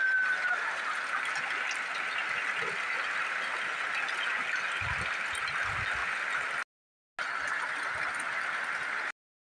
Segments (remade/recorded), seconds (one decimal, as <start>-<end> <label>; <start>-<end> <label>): 0.0-9.5 recorded